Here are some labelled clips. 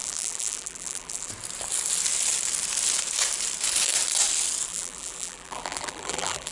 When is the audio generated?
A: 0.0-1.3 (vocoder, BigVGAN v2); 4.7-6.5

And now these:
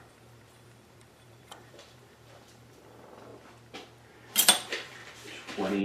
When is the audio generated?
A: 0.0-3.3 (vocoder, BigVGAN v2); 4.4-5.0

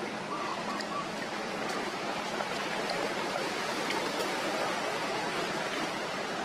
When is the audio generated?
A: 0.5-3.9 (vocoder, BigVGAN v2)

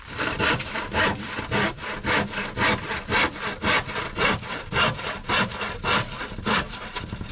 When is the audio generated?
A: 0.0-1.1 (vocoder, BigVGAN v2); 4.9-7.3